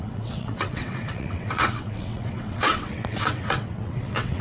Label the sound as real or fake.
fake